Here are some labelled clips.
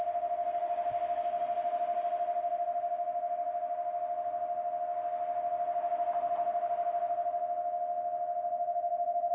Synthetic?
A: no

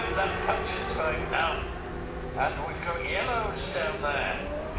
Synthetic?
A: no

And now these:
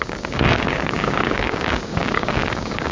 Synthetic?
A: yes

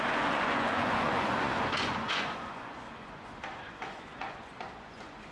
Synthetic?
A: yes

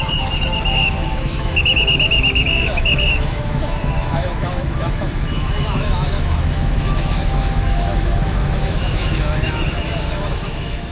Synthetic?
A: yes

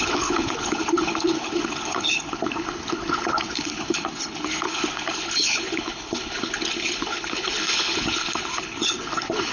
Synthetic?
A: yes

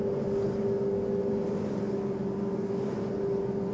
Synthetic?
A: no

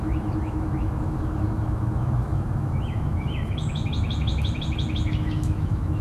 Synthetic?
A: yes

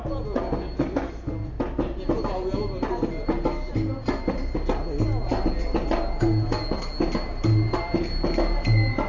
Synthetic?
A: no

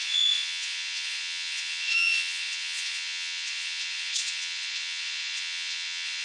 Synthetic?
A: yes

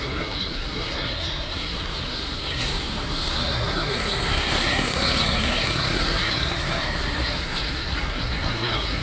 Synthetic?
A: yes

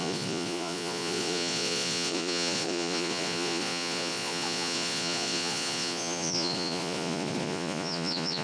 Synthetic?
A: yes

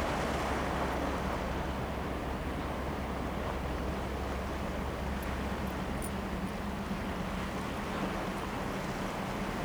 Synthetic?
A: no